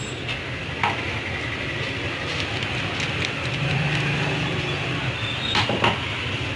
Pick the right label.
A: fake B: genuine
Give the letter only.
B